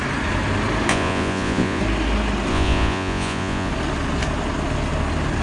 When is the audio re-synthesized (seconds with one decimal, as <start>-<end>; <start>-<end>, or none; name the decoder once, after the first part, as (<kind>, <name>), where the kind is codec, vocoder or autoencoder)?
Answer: 0.9-1.8 (vocoder, Vocos); 2.5-3.7

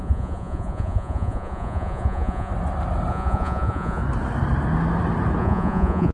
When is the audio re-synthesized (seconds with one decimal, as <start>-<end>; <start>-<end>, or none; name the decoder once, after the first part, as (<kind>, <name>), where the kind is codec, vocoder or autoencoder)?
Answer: 0.0-2.5 (vocoder, Vocos); 3.1-4.0; 5.4-6.1

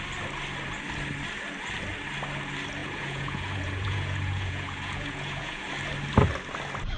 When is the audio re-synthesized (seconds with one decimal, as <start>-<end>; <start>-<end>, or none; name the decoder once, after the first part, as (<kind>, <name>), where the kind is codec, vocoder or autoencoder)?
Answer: 2.8-5.6 (vocoder, Vocos)

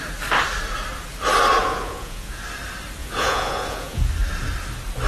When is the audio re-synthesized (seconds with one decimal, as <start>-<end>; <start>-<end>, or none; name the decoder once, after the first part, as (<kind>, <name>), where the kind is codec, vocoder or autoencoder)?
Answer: 1.6-2.4 (vocoder, Vocos); 3.0-4.1

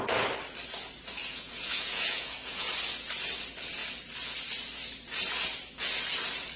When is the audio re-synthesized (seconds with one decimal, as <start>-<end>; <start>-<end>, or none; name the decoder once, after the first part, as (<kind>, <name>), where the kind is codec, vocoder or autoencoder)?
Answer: 1.2-2.7 (vocoder, Vocos)